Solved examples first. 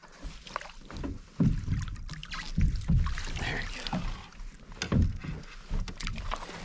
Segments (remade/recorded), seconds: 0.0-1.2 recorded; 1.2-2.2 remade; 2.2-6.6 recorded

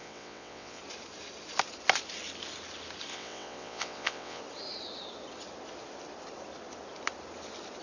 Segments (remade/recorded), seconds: 0.0-0.8 remade; 0.8-3.1 recorded; 3.1-4.4 remade; 4.4-7.8 recorded

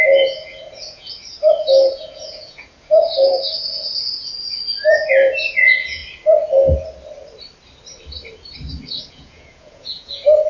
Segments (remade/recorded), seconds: 0.0-1.1 remade; 1.1-2.0 recorded; 2.0-3.1 remade; 3.1-5.1 recorded; 5.1-6.0 remade; 6.0-9.0 recorded; 9.0-10.5 remade

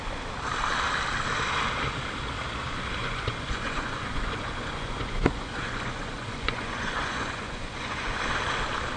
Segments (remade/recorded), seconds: 0.0-3.0 recorded; 3.0-8.2 remade; 8.2-9.0 recorded

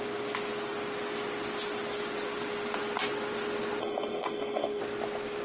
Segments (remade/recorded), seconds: 0.0-3.8 recorded; 3.8-4.8 remade; 4.8-5.4 recorded

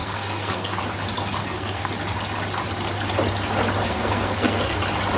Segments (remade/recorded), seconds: 0.0-0.8 remade; 0.8-1.4 recorded; 1.4-1.9 remade; 1.9-3.8 recorded; 3.8-4.8 remade; 4.8-5.2 recorded

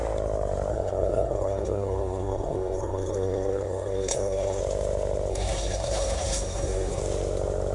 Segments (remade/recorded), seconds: 0.0-0.7 recorded; 0.7-4.6 remade; 4.6-5.3 recorded; 5.3-7.0 remade; 7.0-7.7 recorded